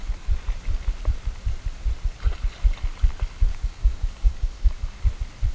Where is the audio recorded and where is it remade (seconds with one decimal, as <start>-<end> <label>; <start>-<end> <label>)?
0.0-3.5 recorded; 3.5-5.1 remade; 5.1-5.5 recorded